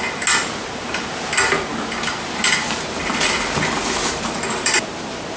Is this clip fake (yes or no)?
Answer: no